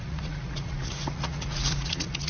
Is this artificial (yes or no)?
yes